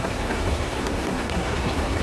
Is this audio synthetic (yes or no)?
yes